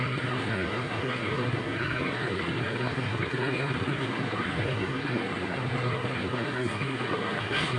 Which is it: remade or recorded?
remade